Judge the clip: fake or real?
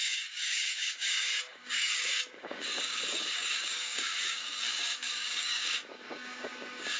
fake